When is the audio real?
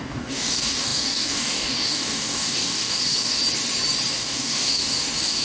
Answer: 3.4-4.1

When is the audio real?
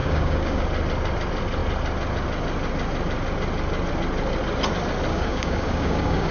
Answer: 0.6-5.1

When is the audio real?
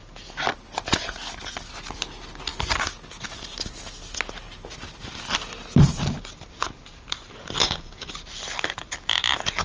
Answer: 0.0-7.6; 8.1-9.6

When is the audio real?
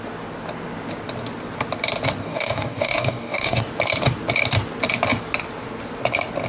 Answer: 0.0-2.2; 3.6-6.5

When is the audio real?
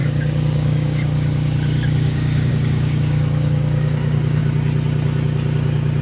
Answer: 4.4-6.0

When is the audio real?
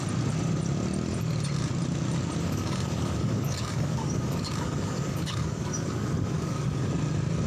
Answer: 0.0-2.4; 6.9-7.5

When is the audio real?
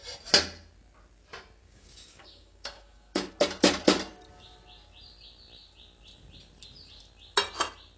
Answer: 0.0-1.6; 3.3-8.0